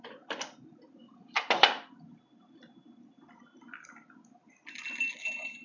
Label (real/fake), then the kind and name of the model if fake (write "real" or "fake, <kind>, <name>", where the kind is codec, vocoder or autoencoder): real